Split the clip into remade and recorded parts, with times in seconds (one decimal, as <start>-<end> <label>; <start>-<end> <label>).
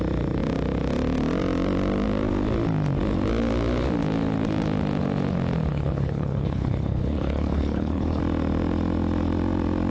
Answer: 0.0-5.7 recorded; 5.7-8.2 remade; 8.2-9.9 recorded